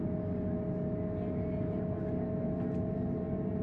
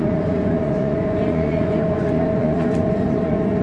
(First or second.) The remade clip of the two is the second